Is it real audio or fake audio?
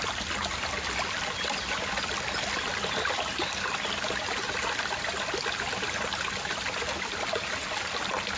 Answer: real